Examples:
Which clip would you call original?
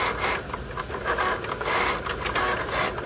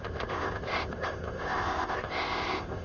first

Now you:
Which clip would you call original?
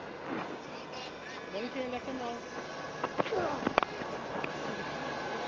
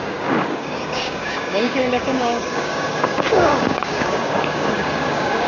first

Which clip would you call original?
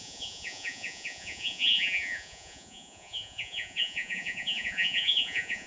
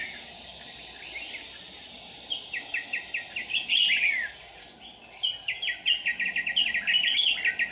second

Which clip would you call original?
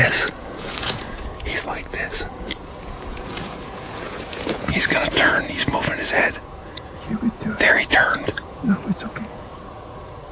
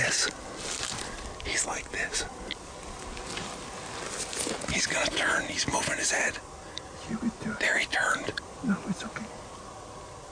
second